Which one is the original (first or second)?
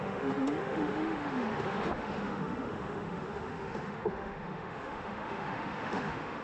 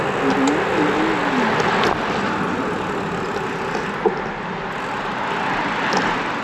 second